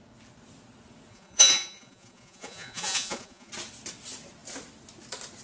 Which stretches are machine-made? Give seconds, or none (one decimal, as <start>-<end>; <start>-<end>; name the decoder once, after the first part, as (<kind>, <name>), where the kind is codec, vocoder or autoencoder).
1.1-3.5 (vocoder, Vocos)